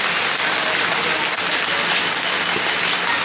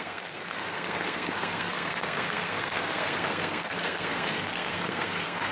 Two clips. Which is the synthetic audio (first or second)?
second